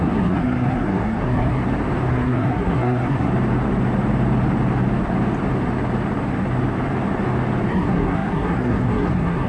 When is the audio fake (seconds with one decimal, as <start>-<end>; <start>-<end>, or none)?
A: 0.0-1.6; 2.1-3.3; 7.7-9.5

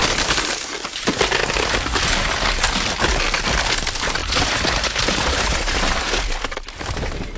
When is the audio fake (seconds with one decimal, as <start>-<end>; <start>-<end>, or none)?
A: 4.2-7.4

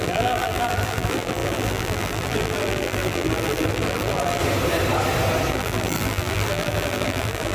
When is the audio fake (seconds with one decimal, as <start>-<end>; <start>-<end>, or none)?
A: 0.0-4.4; 5.5-7.5